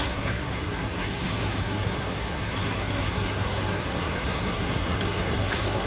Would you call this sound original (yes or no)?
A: no